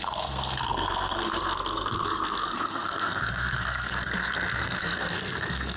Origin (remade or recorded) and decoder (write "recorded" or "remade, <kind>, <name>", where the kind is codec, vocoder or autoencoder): remade, codec, SNAC